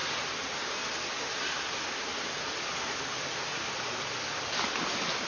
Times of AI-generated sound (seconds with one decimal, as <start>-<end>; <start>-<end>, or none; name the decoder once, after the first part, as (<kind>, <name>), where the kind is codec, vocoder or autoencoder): none